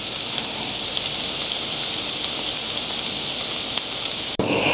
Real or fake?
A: fake